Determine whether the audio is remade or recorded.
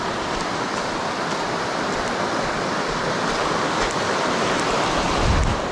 recorded